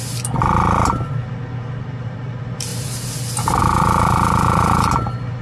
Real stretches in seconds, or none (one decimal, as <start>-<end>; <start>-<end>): 0.0-5.4